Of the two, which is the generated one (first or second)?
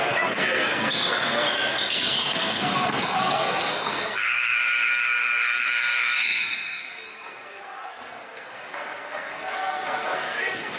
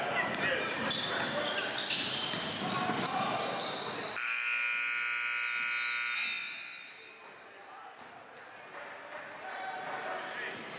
first